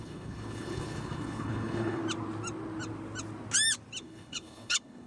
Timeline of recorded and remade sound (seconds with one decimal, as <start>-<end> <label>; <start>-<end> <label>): 0.0-2.0 remade; 2.0-4.0 recorded; 4.0-5.1 remade